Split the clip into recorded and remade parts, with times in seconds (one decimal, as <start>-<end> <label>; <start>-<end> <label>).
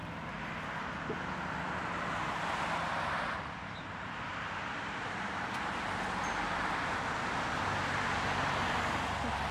0.0-2.8 recorded; 2.8-3.8 remade; 3.8-9.5 recorded